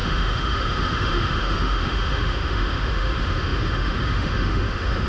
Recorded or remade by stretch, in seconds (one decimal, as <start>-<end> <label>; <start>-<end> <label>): 0.0-5.1 remade